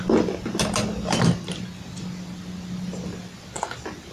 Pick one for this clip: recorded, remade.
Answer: recorded